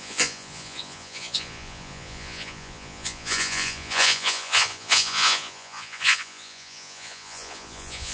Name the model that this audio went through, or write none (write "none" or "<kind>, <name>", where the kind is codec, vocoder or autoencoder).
vocoder, Vocos